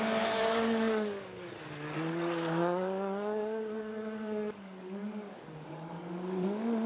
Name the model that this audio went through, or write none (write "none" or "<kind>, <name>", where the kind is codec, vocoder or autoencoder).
codec, DAC